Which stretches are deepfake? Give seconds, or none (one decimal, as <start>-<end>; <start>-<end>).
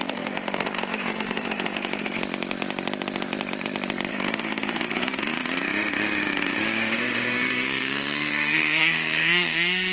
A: 0.0-2.2; 4.1-9.9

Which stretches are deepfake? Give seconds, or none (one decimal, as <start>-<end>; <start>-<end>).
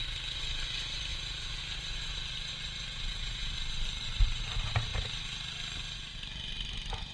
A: 1.1-1.6; 2.9-3.5